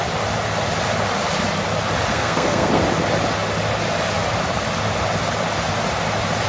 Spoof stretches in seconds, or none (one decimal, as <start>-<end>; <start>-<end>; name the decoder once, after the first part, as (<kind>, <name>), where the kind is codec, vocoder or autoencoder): 2.1-2.8 (codec, SNAC)